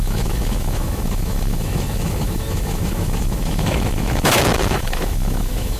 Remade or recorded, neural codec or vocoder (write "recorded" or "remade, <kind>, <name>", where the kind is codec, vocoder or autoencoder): remade, autoencoder, DAC-VAE